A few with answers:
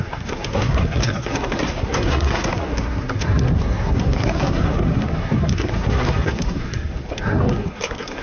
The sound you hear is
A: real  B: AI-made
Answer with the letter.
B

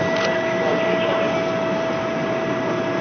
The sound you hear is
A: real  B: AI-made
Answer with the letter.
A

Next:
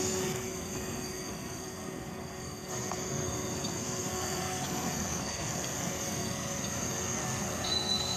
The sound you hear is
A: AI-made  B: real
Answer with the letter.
A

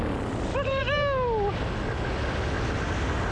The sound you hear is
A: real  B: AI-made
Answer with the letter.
A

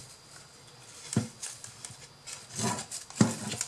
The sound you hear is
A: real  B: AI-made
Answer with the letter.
A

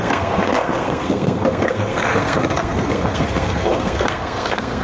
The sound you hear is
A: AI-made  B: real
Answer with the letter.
A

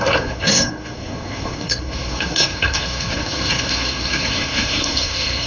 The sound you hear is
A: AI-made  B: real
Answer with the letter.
A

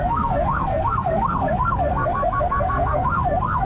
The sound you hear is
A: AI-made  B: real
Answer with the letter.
A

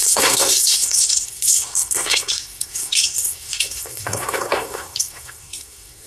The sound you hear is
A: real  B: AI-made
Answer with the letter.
B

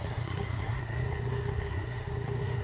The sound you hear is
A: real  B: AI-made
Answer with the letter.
B